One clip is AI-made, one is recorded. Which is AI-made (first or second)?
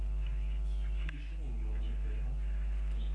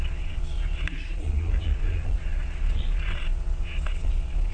second